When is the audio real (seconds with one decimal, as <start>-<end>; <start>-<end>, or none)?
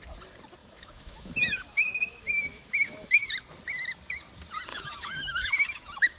0.0-0.6; 3.3-4.7